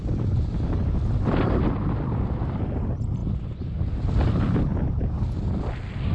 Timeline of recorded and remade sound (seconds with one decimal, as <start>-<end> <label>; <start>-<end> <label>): 0.0-6.1 recorded